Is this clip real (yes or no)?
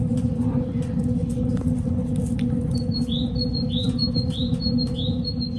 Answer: yes